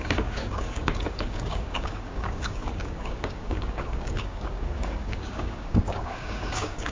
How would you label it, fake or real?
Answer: fake